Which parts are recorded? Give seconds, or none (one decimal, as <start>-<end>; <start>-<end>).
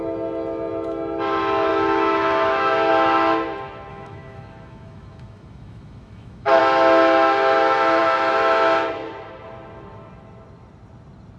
0.0-1.7; 2.9-3.9; 6.6-11.4